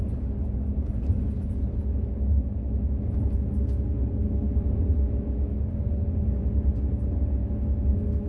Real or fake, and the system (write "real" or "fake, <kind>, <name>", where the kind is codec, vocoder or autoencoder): real